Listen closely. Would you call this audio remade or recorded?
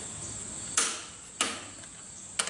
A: recorded